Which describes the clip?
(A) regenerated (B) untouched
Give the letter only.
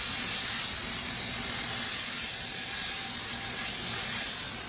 B